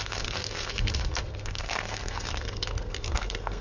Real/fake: fake